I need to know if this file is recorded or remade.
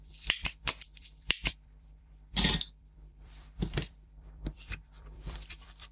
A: remade